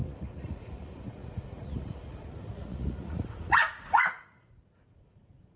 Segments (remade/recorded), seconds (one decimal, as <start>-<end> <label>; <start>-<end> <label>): 0.0-5.6 remade